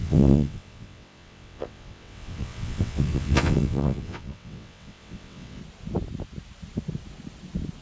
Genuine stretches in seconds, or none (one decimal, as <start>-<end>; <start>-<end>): 5.6-7.8